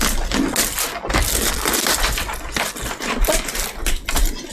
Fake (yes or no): no